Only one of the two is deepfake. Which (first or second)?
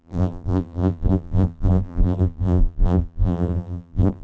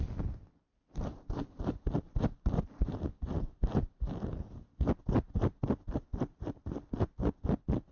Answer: first